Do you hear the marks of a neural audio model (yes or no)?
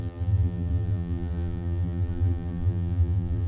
yes